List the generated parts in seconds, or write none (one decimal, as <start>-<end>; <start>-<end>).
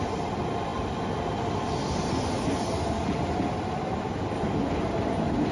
none